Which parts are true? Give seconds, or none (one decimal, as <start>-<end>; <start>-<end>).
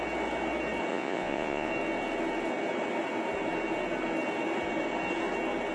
0.0-0.9; 1.7-5.7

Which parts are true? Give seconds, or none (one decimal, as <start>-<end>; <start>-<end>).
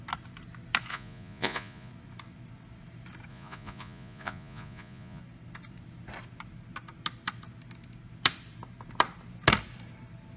0.0-0.9; 1.9-3.3; 5.2-10.4